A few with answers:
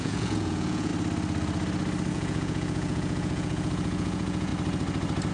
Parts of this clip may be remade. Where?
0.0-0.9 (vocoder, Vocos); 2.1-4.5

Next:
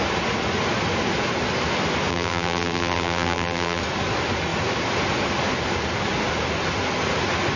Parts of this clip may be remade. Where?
2.1-3.8 (vocoder, BigVGAN v2)

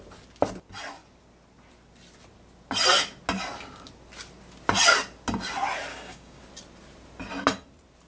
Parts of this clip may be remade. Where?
5.9-6.4 (codec, DAC)

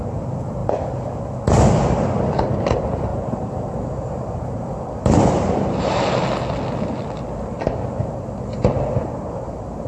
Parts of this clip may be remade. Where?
3.1-4.8 (vocoder, BigVGAN v2)

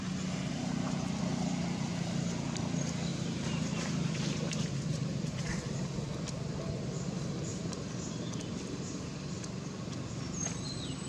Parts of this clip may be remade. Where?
3.1-5.8 (vocoder, BigVGAN v2); 7.5-8.2

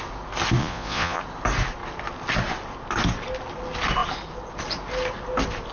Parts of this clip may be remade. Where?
0.6-1.2 (vocoder, Vocos)

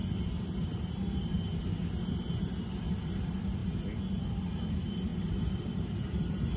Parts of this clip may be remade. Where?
2.4-3.6 (vocoder, BigVGAN v2); 4.2-6.6